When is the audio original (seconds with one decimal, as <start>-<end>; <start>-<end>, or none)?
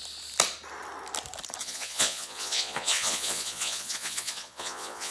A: 0.0-1.6